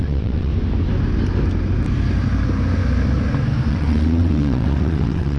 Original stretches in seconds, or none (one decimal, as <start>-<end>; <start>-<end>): 0.5-3.7